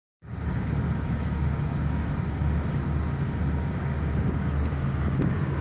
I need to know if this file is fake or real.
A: fake